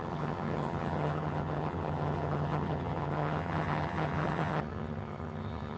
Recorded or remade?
remade